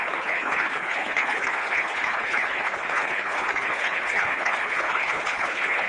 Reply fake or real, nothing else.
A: fake